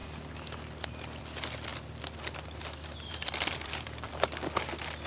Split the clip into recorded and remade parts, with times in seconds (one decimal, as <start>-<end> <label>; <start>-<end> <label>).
0.0-1.7 recorded; 1.7-4.1 remade; 4.1-5.1 recorded